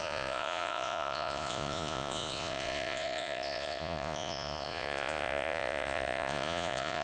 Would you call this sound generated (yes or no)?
yes